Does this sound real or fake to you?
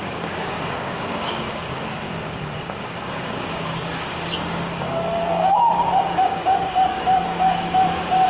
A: fake